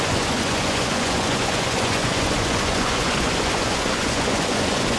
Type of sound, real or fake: fake